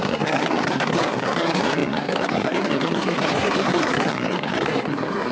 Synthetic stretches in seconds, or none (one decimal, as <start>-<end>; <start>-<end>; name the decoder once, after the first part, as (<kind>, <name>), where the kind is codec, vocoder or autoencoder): 0.0-5.3 (codec, SNAC)